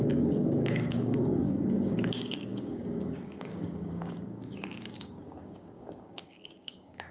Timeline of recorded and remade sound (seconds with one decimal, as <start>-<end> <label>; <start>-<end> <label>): 0.0-7.1 remade